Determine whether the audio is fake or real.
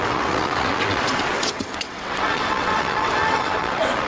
fake